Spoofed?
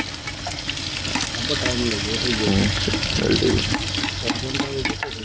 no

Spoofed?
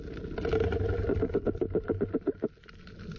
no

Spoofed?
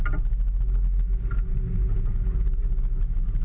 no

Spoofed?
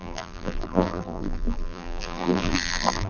yes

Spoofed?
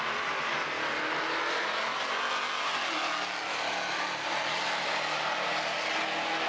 no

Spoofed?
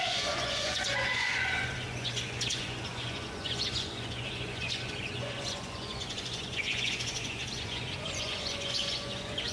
yes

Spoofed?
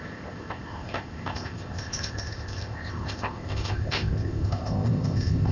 yes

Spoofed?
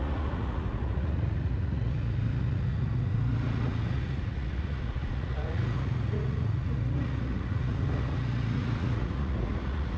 yes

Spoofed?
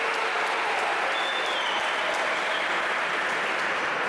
no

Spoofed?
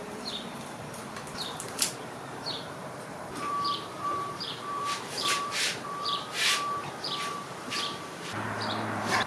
yes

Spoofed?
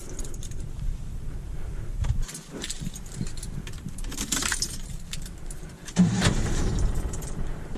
yes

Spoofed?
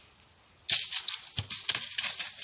no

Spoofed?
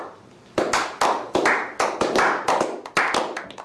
no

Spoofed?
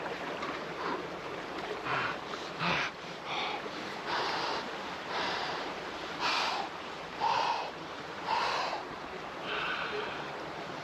yes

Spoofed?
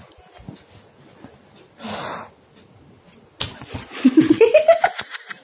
no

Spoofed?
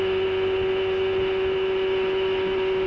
no